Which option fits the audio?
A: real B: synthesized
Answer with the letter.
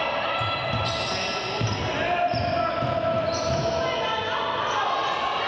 A